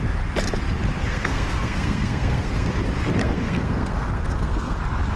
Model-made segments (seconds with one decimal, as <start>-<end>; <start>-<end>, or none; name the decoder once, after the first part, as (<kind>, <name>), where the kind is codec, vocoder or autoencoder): 1.0-2.7 (codec, SNAC); 3.2-4.8